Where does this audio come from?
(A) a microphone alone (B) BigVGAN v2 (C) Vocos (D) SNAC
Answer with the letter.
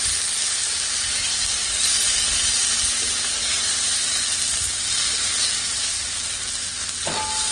A